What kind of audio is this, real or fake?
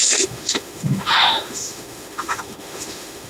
fake